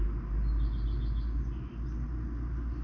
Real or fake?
real